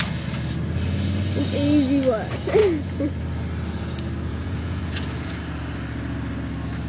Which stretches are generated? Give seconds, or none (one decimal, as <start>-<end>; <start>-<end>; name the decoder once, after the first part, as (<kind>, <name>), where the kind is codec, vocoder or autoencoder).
2.6-3.2 (vocoder, Vocos); 4.3-5.4